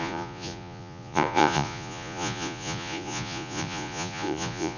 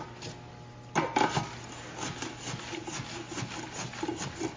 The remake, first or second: first